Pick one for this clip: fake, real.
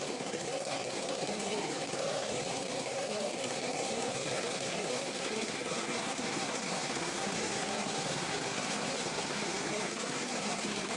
fake